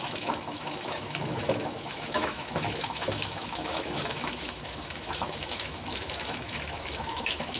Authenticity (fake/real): fake